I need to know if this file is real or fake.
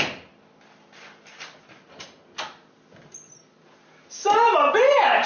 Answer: real